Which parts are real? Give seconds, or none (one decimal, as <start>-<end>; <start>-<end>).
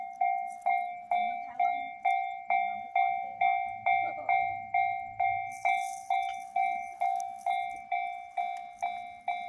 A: 0.0-9.5